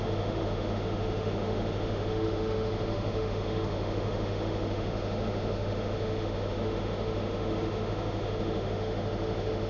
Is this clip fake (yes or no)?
yes